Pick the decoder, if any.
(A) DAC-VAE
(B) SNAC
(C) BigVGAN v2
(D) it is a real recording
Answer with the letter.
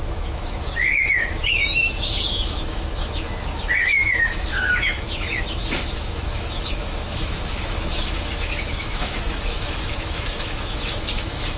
A